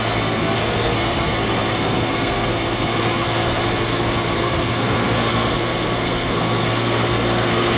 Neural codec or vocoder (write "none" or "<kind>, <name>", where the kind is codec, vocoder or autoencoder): codec, SNAC